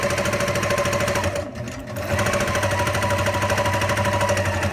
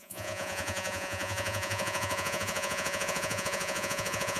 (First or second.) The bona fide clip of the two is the first